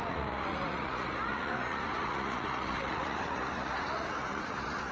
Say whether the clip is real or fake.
fake